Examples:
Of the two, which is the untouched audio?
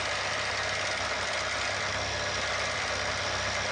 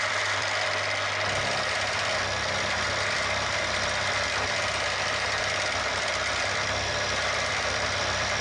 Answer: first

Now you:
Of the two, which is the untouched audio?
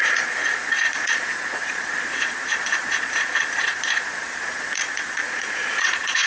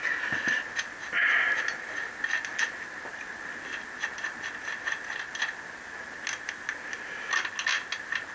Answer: second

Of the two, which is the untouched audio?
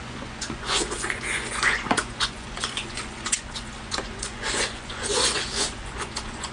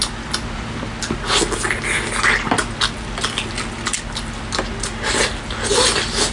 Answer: second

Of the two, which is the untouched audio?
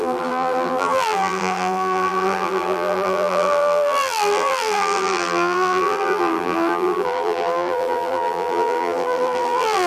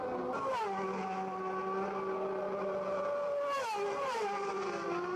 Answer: second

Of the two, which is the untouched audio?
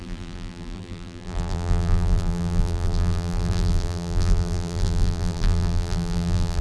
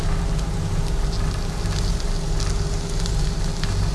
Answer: second